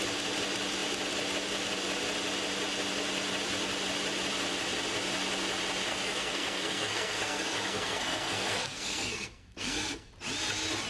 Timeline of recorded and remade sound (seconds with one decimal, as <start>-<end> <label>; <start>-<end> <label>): 0.0-5.9 recorded; 5.9-10.1 remade; 10.1-10.9 recorded

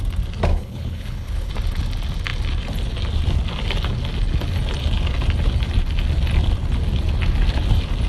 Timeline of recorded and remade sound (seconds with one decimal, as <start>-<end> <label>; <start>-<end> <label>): 0.0-0.5 recorded; 0.5-1.5 remade; 1.5-8.1 recorded

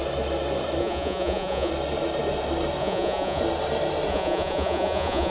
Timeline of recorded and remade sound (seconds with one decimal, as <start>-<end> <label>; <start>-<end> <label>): 0.0-0.8 recorded; 0.8-1.7 remade; 1.7-2.8 recorded; 2.8-3.4 remade; 3.4-4.1 recorded; 4.1-5.3 remade

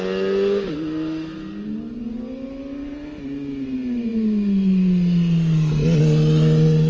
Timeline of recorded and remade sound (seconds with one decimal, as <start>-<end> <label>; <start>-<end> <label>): 0.0-6.9 recorded

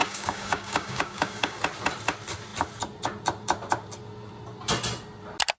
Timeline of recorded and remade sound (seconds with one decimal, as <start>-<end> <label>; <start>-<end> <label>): 0.0-1.6 remade; 1.6-5.6 recorded

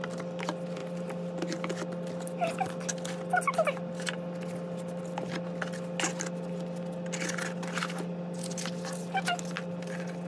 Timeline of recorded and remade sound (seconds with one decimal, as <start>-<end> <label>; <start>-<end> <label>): 0.0-10.3 recorded

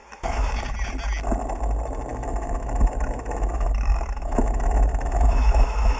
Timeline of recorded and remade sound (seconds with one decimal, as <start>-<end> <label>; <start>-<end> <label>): 0.0-0.6 remade; 0.6-2.1 recorded; 2.1-6.0 remade